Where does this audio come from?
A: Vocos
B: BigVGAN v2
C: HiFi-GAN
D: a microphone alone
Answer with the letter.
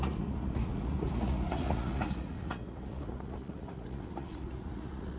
A